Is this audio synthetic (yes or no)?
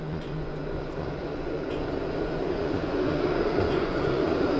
yes